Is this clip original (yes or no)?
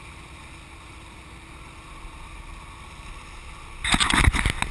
yes